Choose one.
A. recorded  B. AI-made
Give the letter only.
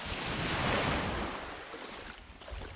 A